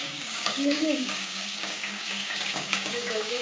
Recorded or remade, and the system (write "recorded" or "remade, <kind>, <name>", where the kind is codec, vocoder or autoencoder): remade, codec, DAC